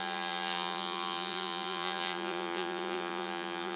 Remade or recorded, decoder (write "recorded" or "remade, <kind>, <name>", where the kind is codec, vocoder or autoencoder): remade, vocoder, BigVGAN v2